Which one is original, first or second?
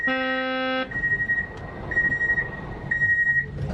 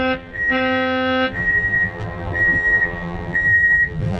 first